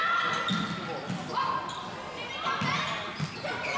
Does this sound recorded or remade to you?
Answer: recorded